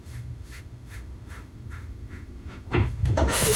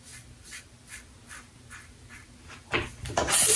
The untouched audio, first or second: second